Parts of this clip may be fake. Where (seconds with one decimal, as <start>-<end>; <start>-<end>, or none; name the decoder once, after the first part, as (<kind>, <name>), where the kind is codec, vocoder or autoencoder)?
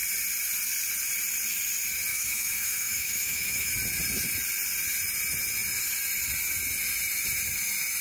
2.1-3.7 (autoencoder, DAC-VAE)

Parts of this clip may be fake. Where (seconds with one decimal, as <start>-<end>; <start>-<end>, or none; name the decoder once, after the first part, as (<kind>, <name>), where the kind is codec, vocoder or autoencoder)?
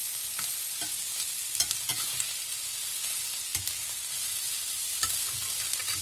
none